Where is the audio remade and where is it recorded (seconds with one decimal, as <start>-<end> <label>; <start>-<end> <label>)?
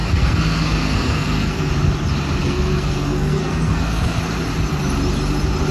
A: 0.0-1.7 remade; 1.7-2.4 recorded; 2.4-4.2 remade; 4.2-5.7 recorded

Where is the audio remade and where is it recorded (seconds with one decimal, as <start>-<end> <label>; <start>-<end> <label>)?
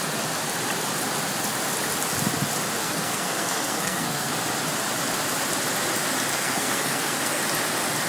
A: 0.0-2.8 recorded; 2.8-4.3 remade; 4.3-6.3 recorded; 6.3-7.4 remade; 7.4-8.1 recorded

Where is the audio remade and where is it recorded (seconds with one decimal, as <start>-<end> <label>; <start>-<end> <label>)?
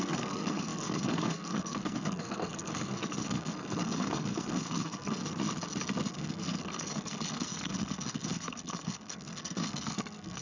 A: 0.0-5.2 remade; 5.2-6.1 recorded; 6.1-10.4 remade